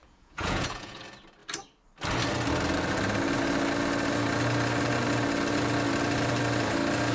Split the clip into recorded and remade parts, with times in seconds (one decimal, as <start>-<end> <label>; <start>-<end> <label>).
0.0-1.0 remade; 1.0-7.1 recorded